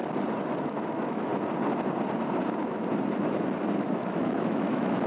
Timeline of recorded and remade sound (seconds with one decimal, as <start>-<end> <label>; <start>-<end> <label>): 0.0-0.6 recorded; 0.6-1.3 remade; 1.3-3.8 recorded; 3.8-5.1 remade

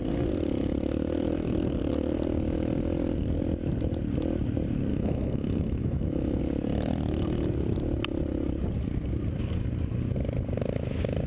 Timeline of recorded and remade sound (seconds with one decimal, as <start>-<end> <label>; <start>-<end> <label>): 0.0-4.9 recorded; 4.9-6.4 remade; 6.4-11.3 recorded

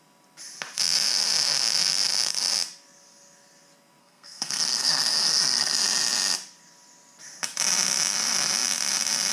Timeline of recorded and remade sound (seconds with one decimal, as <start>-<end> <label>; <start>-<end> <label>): 0.0-4.0 recorded; 4.0-5.4 remade; 5.4-9.3 recorded

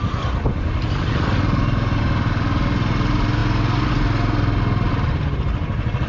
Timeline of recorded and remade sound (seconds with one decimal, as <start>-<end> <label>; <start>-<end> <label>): 0.0-6.1 recorded

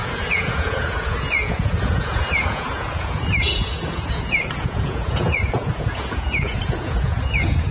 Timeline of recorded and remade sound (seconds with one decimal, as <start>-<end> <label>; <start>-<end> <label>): 0.0-7.7 remade

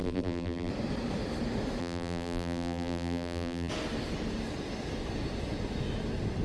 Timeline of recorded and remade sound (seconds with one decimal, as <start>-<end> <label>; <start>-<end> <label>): 0.0-0.7 remade; 0.7-1.8 recorded; 1.8-3.7 remade; 3.7-6.4 recorded

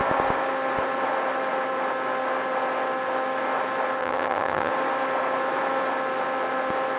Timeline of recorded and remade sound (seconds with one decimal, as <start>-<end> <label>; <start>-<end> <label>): 0.0-4.0 recorded; 4.0-4.7 remade; 4.7-7.0 recorded